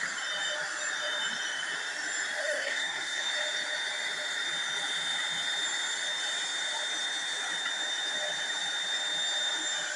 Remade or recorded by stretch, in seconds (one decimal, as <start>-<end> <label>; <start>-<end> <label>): 0.0-2.4 recorded; 2.4-3.3 remade; 3.3-10.0 recorded